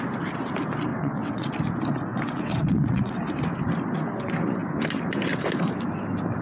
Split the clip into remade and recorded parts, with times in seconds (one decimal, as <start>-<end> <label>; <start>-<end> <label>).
0.0-0.9 recorded; 0.9-1.5 remade; 1.5-2.1 recorded; 2.1-3.2 remade; 3.2-6.4 recorded